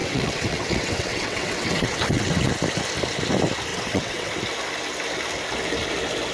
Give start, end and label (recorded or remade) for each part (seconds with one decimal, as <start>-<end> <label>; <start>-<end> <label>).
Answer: 0.0-2.5 remade; 2.5-3.7 recorded; 3.7-4.3 remade; 4.3-6.3 recorded